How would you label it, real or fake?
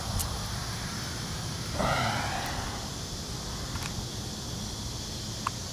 real